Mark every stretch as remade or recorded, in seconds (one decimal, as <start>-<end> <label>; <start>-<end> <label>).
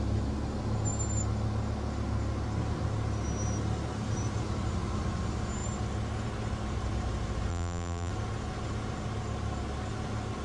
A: 0.0-7.5 recorded; 7.5-8.1 remade; 8.1-10.4 recorded